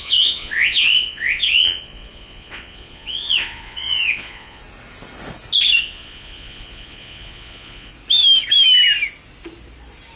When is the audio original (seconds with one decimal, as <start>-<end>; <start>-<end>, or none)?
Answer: 4.6-5.8; 7.9-10.2